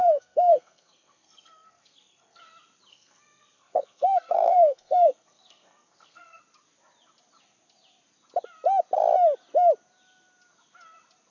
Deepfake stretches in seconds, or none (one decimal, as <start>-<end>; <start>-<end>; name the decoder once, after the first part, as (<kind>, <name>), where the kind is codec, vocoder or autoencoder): 0.0-2.4 (codec, SNAC); 2.9-6.4